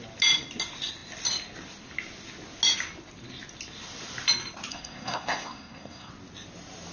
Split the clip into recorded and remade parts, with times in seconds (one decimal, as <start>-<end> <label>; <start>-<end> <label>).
0.0-4.7 recorded; 4.7-6.1 remade; 6.1-6.9 recorded